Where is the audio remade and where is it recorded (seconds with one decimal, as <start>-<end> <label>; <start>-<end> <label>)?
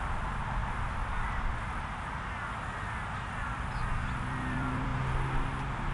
0.0-0.6 remade; 0.6-4.1 recorded; 4.1-4.9 remade; 4.9-5.4 recorded; 5.4-5.9 remade